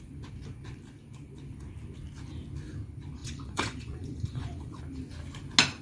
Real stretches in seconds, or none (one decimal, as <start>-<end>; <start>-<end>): 0.0-3.2; 4.8-5.8

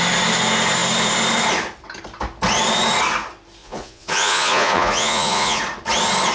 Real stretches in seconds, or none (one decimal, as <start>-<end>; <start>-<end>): 0.0-3.6; 5.6-6.3

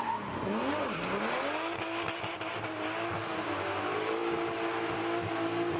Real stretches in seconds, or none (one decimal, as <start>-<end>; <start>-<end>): 0.0-5.8

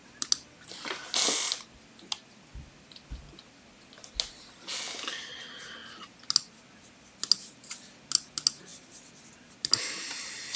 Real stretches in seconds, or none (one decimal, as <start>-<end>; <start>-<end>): 0.0-10.6

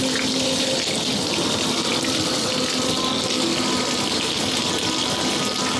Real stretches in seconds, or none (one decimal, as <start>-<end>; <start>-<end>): 0.0-5.8

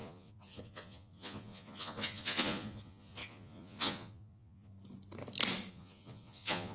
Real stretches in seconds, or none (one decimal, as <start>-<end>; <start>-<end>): 4.7-5.7